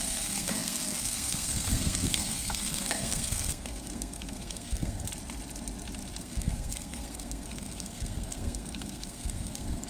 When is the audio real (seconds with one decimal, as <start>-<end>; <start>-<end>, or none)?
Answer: 5.1-6.2